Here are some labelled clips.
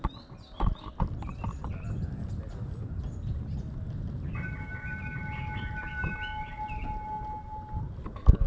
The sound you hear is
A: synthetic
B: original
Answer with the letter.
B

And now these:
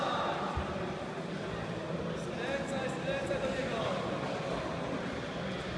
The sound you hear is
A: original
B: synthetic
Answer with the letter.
A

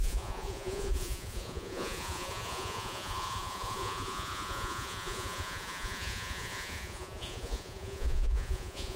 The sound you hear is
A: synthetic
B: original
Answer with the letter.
A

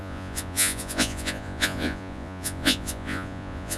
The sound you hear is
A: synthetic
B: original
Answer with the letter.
A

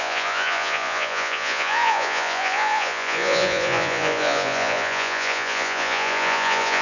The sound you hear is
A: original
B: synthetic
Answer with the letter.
B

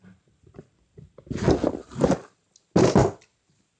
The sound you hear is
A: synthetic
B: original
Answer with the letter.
B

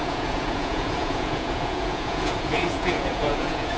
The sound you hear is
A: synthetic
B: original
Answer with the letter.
A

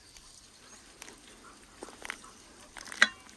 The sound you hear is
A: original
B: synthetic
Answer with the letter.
A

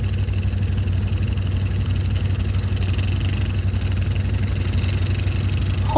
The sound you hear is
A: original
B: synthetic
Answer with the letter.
A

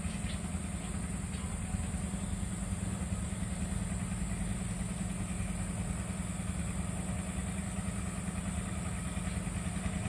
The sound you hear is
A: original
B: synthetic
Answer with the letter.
A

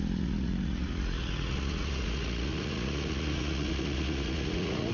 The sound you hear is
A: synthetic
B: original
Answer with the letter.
A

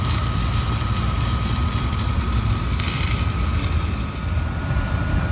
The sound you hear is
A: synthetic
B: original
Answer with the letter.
B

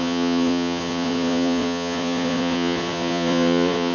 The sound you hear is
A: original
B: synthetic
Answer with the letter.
B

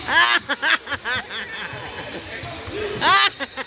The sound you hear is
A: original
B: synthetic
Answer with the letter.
A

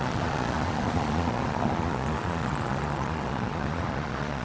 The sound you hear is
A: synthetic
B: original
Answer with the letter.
A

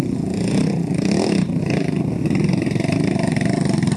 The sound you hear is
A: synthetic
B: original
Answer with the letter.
B